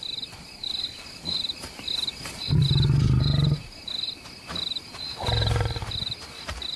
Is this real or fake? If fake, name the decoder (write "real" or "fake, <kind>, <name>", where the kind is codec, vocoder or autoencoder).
real